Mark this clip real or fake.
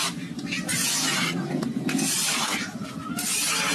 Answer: real